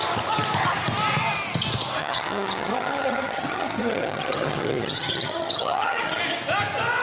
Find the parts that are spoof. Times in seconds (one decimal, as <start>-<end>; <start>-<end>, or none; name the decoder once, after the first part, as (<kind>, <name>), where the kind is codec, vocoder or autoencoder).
2.0-6.2 (vocoder, HiFi-GAN)